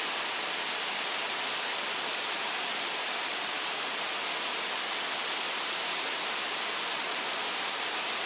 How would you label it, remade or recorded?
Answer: recorded